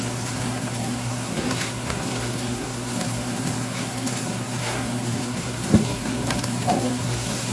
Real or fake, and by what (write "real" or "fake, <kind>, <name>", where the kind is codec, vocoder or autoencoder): fake, codec, SNAC